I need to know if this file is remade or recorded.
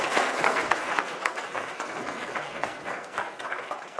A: remade